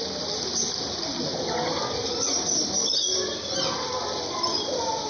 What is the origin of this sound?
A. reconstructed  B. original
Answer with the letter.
B